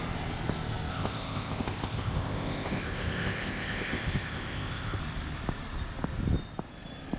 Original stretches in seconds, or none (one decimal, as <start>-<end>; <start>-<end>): 0.0-0.9; 5.0-7.2